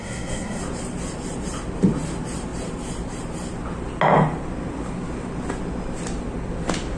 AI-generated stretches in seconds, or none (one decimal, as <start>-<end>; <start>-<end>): 0.0-0.6